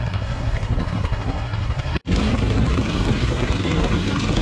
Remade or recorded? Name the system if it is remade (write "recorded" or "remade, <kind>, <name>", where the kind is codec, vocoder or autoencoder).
remade, codec, SNAC